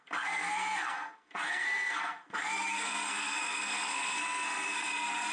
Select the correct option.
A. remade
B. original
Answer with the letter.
A